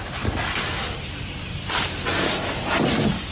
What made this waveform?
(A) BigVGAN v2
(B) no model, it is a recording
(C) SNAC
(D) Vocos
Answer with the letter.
B